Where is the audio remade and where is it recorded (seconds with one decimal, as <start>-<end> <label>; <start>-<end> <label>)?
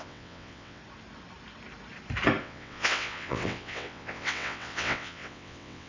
0.0-0.8 remade; 0.8-2.4 recorded; 2.4-5.9 remade